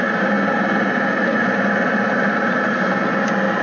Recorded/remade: recorded